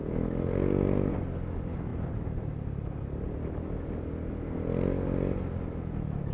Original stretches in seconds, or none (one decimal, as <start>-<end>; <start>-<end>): 0.0-1.9; 2.4-6.3